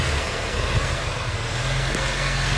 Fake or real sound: fake